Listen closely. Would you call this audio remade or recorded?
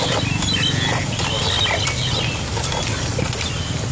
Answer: recorded